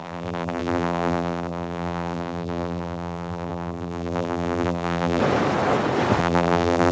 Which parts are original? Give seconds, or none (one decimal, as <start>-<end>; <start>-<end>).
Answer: 5.2-6.2

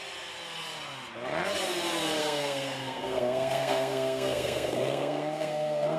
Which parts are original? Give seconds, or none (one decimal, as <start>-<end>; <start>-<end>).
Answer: 0.0-2.2

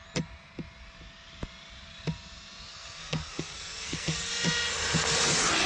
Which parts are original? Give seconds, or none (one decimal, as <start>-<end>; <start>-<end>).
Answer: 0.0-2.7; 4.3-5.7

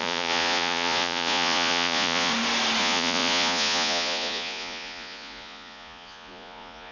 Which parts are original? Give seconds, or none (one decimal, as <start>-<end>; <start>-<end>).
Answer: 2.3-2.8

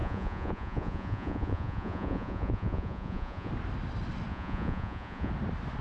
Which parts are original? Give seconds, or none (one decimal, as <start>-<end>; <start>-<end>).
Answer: 3.5-4.3; 5.3-5.8

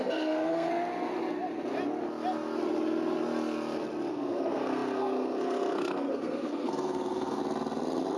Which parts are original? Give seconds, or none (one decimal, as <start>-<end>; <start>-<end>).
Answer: 0.7-4.1; 7.4-8.2